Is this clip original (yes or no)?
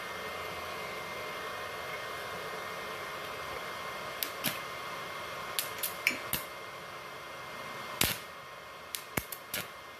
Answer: yes